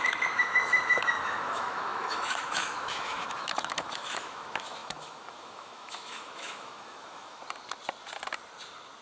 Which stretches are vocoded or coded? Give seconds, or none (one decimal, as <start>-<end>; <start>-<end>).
0.0-7.4